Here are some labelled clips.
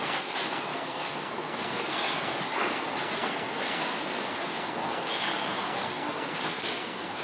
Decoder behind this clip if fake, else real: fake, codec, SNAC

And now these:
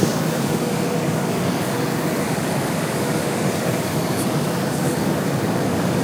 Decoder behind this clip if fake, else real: fake, codec, DAC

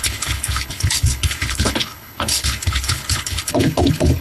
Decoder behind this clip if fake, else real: fake, codec, HILCodec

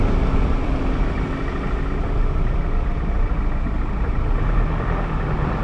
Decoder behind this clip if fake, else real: real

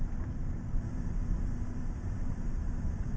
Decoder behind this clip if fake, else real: fake, vocoder, BigVGAN v2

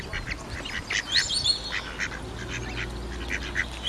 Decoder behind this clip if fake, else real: real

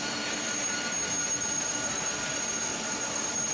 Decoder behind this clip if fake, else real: real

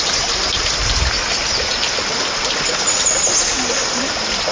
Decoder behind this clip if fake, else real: real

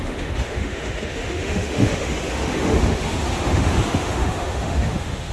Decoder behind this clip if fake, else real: fake, autoencoder, DAC-VAE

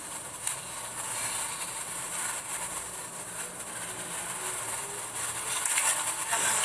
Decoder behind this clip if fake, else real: real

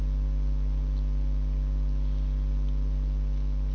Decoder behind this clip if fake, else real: real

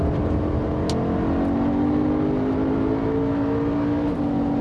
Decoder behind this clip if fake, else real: real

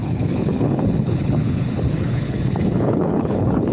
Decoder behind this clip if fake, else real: fake, codec, HILCodec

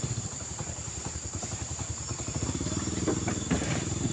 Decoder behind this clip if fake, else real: fake, vocoder, BigVGAN v2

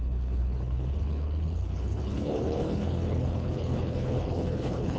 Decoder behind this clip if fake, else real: fake, codec, HILCodec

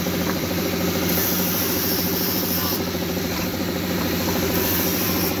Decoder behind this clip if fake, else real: fake, vocoder, BigVGAN v2